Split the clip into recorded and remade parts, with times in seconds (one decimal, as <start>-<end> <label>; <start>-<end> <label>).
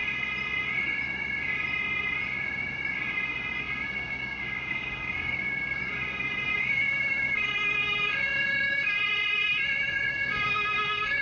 0.0-3.6 recorded; 3.6-5.8 remade; 5.8-6.6 recorded; 6.6-9.0 remade; 9.0-10.1 recorded; 10.1-11.2 remade